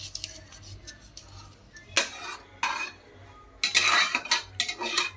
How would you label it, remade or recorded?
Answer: recorded